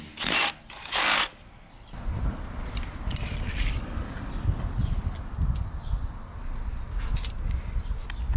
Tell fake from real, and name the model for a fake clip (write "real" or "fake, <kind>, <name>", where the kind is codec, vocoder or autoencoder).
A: real